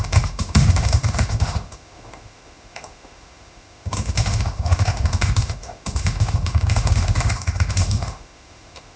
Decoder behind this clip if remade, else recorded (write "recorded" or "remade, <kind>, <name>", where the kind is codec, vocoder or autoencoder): remade, autoencoder, DAC-VAE